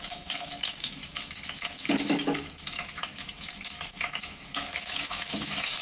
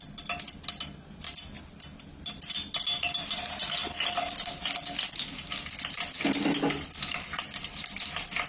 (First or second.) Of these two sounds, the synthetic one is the first